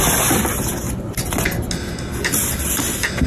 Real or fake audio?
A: real